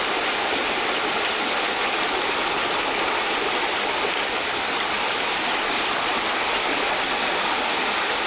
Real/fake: real